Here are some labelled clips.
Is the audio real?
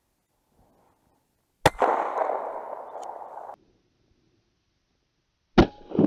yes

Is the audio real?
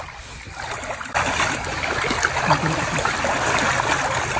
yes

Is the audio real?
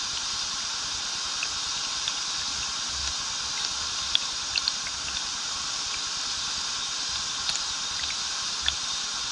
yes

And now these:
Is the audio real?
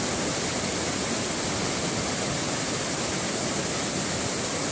yes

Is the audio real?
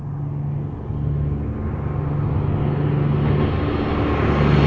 yes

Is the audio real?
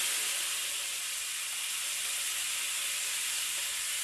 yes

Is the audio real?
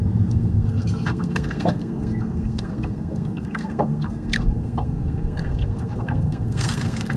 no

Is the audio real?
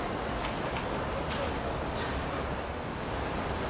yes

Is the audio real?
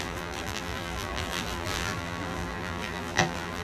no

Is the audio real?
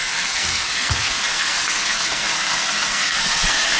no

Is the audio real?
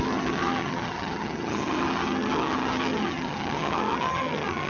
no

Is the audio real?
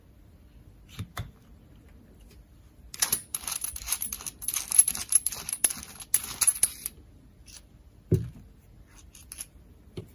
yes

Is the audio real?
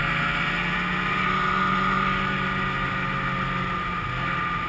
yes